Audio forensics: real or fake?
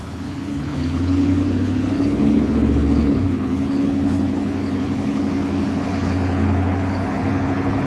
fake